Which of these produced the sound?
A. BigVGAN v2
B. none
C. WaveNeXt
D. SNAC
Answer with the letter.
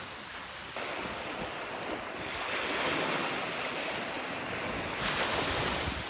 A